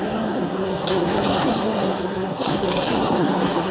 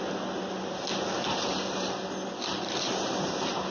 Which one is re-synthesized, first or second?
first